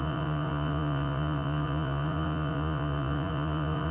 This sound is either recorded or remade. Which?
remade